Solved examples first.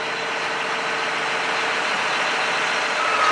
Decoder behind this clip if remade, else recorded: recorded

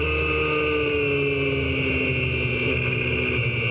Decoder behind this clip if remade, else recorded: recorded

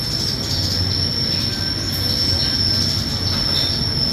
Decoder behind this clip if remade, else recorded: recorded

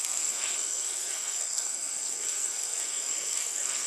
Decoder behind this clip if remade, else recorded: remade, codec, SNAC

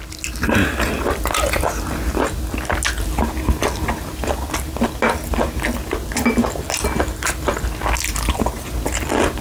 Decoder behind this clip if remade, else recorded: recorded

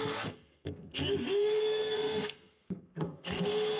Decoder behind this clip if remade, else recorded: remade, codec, SNAC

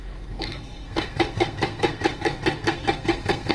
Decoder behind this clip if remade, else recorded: remade, codec, SNAC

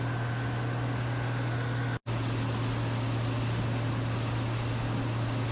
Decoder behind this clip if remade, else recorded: recorded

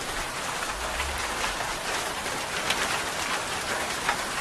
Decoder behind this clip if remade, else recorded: recorded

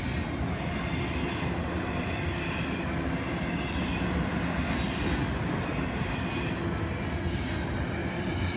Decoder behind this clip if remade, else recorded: recorded